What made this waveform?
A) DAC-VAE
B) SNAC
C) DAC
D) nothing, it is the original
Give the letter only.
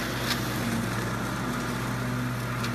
D